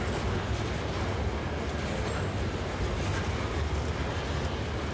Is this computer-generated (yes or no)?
no